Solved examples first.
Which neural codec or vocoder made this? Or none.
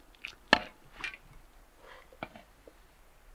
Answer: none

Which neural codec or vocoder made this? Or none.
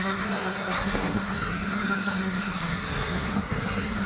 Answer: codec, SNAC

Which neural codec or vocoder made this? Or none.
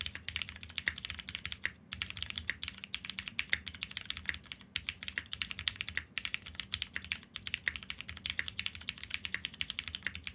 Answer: none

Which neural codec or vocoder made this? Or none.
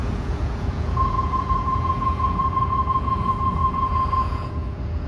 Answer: vocoder, Vocos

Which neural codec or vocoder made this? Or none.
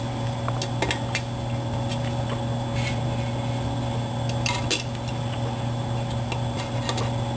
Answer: none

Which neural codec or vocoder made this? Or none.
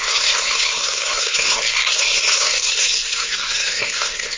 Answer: codec, SNAC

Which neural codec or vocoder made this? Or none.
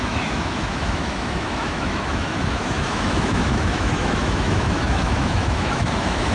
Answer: autoencoder, DAC-VAE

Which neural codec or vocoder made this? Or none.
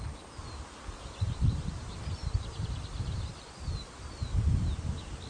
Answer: none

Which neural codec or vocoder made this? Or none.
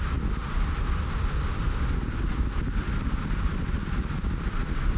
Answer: none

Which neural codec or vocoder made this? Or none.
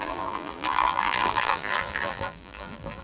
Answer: vocoder, BigVGAN v2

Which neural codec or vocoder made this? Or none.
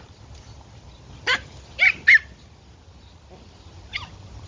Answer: none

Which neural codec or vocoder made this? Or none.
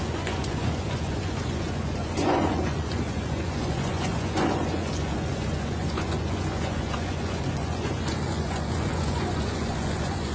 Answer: vocoder, Vocos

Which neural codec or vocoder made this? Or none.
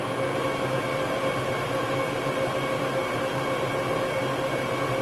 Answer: none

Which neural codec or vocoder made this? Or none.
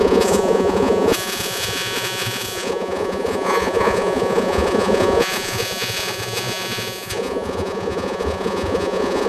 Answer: vocoder, Vocos